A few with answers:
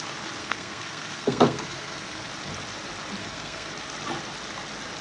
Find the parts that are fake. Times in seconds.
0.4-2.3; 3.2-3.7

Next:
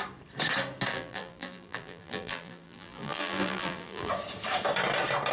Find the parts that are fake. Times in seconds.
0.9-4.1